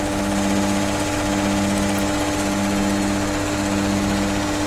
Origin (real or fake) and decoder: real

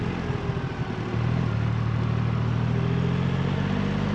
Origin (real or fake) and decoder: real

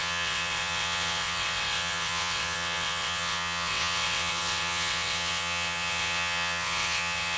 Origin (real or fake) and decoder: fake, vocoder, WaveNeXt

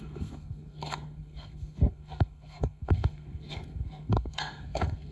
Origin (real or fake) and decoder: fake, codec, SNAC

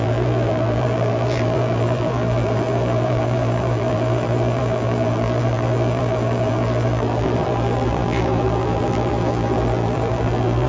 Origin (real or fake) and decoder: fake, vocoder, BigVGAN v2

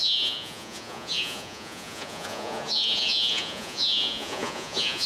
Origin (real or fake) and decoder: fake, vocoder, Vocos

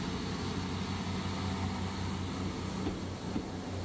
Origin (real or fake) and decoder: real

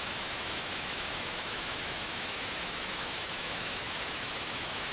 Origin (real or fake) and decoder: fake, autoencoder, DAC-VAE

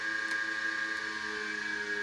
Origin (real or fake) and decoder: real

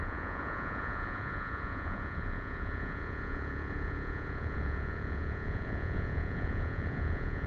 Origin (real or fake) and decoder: fake, vocoder, Vocos